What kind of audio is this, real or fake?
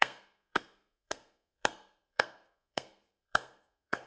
fake